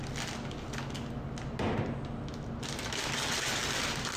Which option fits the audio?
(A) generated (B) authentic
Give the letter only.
B